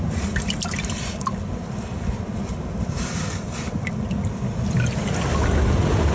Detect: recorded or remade recorded